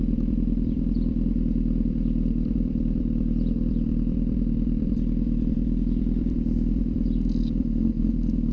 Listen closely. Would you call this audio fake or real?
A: fake